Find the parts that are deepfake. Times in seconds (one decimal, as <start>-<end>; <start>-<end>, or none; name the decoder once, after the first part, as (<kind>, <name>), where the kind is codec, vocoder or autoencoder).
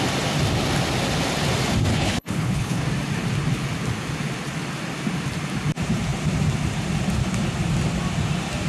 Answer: 1.9-2.8 (codec, HILCodec)